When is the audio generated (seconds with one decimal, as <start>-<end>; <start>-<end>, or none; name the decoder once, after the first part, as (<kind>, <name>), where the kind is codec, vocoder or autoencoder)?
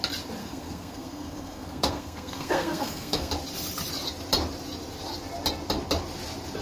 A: 0.4-3.3 (codec, SNAC)